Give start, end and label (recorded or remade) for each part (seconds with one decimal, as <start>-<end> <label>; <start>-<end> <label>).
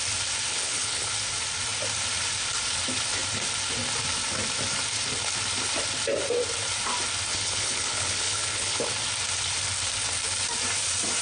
0.0-0.5 recorded; 0.5-1.1 remade; 1.1-7.3 recorded; 7.3-8.9 remade; 8.9-11.2 recorded